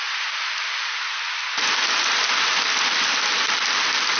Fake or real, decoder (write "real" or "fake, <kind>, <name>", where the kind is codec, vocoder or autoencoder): real